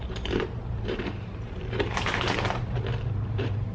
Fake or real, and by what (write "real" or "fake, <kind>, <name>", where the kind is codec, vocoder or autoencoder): fake, vocoder, BigVGAN v2